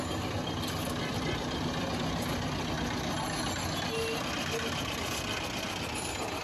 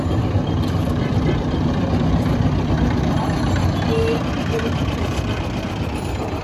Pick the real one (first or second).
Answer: first